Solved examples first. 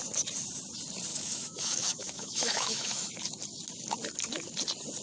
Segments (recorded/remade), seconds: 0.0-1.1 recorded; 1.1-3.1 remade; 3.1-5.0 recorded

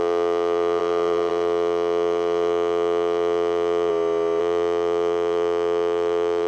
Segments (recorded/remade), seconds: 0.0-3.9 remade; 3.9-4.4 recorded; 4.4-6.5 remade

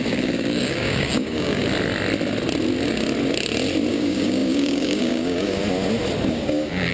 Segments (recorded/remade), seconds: 0.0-1.6 remade; 1.6-3.9 recorded; 3.9-5.6 remade; 5.6-6.3 recorded; 6.3-6.9 remade

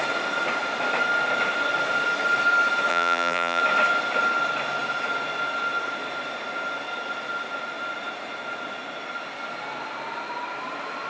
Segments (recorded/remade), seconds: 0.0-2.9 recorded; 2.9-3.6 remade; 3.6-11.1 recorded

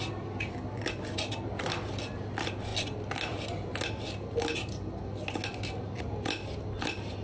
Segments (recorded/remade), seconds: 0.0-7.2 recorded

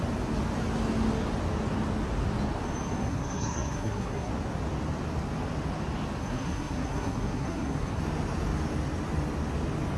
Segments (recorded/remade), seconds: 0.0-3.0 recorded; 3.0-4.3 remade; 4.3-6.2 recorded; 6.2-8.0 remade; 8.0-10.0 recorded